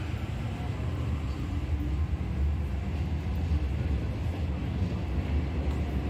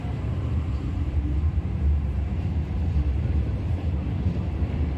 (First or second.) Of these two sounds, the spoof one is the second